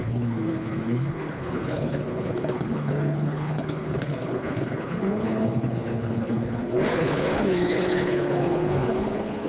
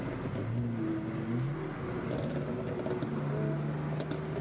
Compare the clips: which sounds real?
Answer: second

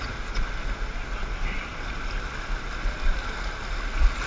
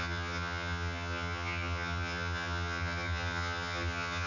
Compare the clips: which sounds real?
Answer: first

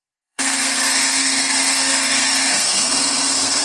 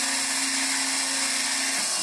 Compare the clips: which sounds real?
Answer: second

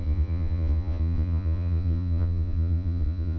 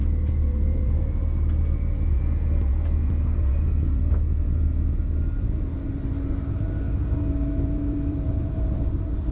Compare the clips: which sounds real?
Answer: second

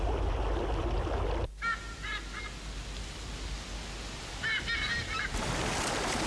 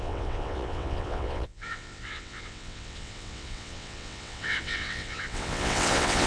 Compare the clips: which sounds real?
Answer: first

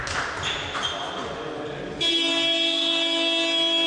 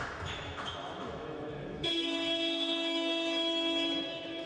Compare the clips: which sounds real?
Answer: first